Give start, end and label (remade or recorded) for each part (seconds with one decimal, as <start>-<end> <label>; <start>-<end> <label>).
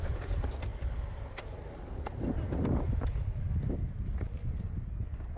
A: 0.0-5.4 recorded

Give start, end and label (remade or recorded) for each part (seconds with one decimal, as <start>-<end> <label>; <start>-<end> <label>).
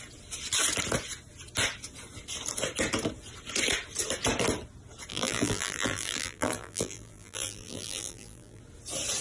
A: 0.0-5.1 recorded; 5.1-8.6 remade; 8.6-9.2 recorded